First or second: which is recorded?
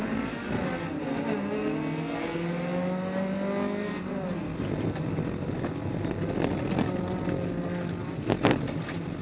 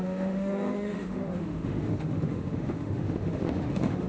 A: first